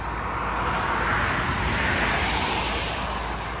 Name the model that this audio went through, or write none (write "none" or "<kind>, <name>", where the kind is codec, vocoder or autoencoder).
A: none